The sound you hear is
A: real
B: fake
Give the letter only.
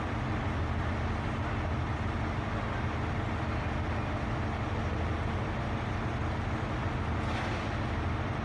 A